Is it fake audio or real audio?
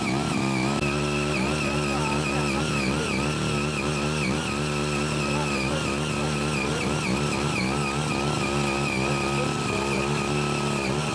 real